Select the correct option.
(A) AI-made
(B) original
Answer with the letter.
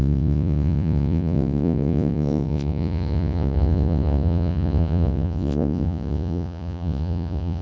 A